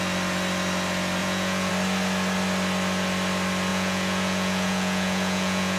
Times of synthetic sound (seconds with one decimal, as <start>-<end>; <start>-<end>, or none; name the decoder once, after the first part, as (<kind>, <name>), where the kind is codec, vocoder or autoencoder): 1.2-1.7 (vocoder, Vocos); 3.7-5.8